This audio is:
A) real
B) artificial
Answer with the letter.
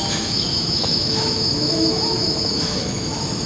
B